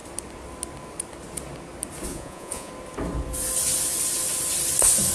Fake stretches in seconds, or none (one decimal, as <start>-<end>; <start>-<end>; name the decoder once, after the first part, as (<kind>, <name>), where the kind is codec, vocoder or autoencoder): 2.1-2.7 (vocoder, Vocos)